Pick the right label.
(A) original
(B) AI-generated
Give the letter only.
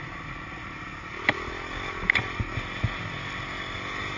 A